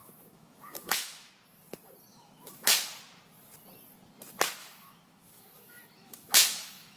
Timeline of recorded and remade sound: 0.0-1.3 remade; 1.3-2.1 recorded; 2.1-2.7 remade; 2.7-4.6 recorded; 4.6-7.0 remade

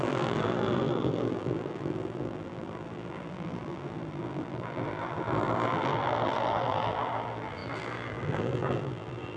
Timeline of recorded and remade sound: 0.0-9.4 remade

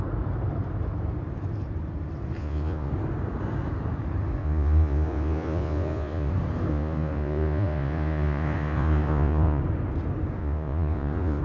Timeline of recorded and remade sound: 0.0-2.4 recorded; 2.4-2.9 remade; 2.9-4.4 recorded; 4.4-6.3 remade; 6.3-6.7 recorded; 6.7-9.6 remade; 9.6-10.4 recorded; 10.4-11.4 remade

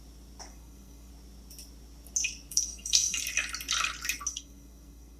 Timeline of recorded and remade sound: 0.0-0.5 recorded; 0.5-1.1 remade; 1.1-2.5 recorded; 2.5-3.2 remade; 3.2-4.3 recorded; 4.3-5.2 remade